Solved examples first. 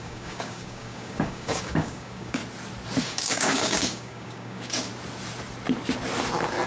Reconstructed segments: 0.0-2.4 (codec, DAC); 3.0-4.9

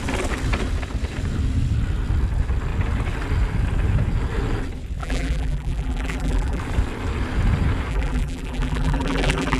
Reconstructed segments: 5.0-6.6 (vocoder, BigVGAN v2); 7.9-9.6